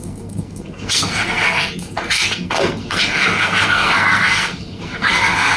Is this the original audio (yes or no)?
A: no